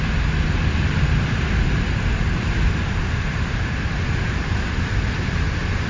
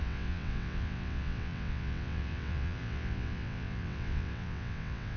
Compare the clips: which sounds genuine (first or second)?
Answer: first